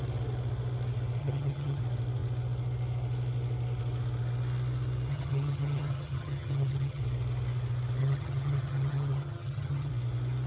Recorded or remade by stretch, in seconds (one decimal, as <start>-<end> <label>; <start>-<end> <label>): 0.0-1.2 recorded; 1.2-1.8 remade; 1.8-5.1 recorded; 5.1-7.0 remade; 7.0-8.0 recorded; 8.0-9.9 remade; 9.9-10.5 recorded